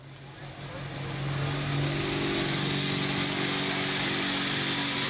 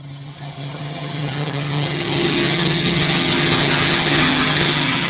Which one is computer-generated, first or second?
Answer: second